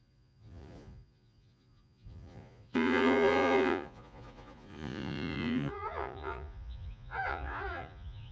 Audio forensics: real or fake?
fake